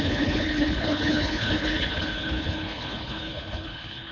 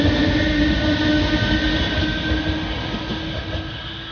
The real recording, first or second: second